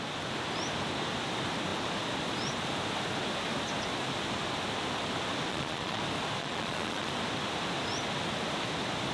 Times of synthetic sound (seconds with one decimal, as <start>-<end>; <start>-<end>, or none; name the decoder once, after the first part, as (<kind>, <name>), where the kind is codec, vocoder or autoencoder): 5.5-6.0 (vocoder, Vocos); 6.4-7.1